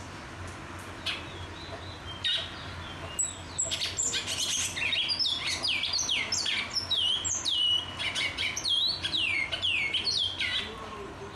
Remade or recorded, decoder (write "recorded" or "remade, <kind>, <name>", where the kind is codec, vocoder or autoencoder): recorded